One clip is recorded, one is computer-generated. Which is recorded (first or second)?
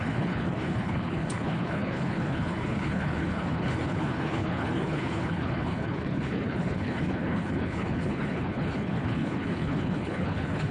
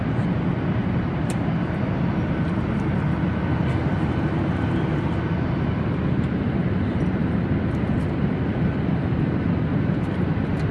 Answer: second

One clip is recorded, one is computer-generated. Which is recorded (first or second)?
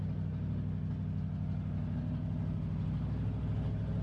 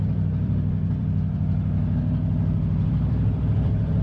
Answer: first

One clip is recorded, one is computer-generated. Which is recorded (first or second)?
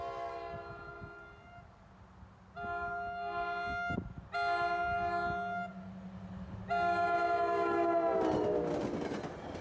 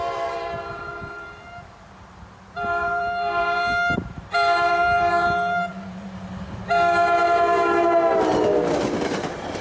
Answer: first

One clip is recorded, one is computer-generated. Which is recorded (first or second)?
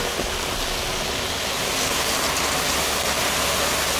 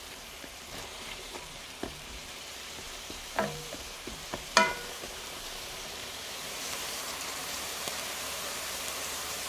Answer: first